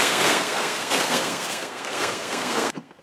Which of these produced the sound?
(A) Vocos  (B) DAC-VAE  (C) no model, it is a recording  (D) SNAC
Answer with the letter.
D